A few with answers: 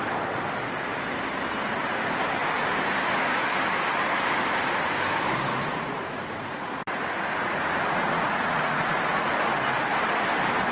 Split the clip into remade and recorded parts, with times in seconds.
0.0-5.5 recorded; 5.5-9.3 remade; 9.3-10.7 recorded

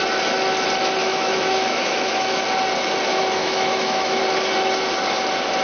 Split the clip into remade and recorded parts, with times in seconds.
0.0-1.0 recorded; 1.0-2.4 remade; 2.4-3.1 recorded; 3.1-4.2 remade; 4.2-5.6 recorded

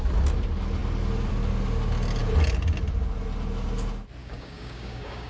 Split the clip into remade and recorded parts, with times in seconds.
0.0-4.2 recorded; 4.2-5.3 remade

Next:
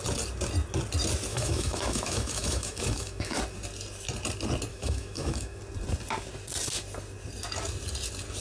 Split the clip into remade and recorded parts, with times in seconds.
0.0-1.3 recorded; 1.3-3.4 remade; 3.4-4.7 recorded; 4.7-5.6 remade; 5.6-8.4 recorded